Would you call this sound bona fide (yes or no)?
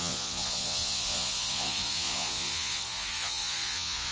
no